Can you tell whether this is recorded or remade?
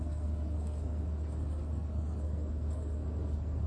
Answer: remade